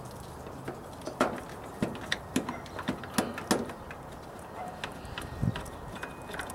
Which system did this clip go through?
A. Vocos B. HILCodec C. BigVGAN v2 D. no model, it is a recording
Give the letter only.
D